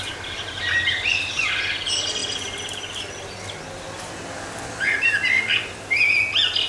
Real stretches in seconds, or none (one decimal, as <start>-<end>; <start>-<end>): 0.0-6.7